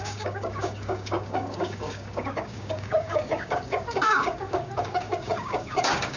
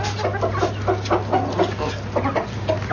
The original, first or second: second